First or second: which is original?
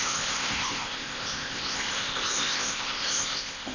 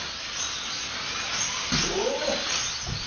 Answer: second